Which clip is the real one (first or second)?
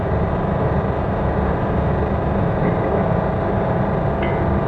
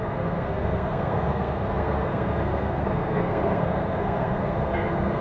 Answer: first